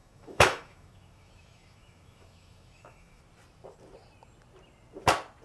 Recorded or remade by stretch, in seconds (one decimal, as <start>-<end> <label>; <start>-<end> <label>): 0.0-3.2 remade; 3.2-5.4 recorded